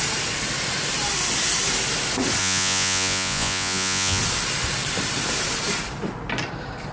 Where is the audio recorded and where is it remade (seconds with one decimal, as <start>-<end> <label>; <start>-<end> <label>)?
0.0-2.4 recorded; 2.4-4.2 remade; 4.2-6.9 recorded